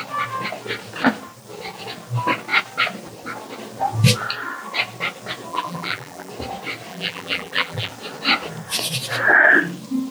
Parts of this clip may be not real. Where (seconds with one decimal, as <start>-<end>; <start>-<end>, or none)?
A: 5.5-6.3; 6.9-7.9